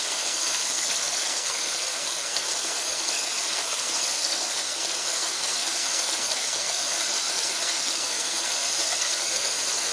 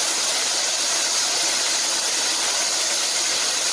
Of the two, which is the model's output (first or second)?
first